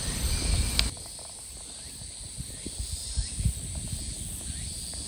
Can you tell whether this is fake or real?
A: real